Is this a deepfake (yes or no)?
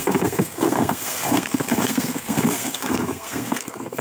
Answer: yes